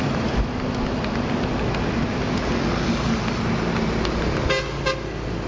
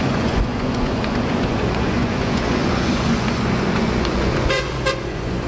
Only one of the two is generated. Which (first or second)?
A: second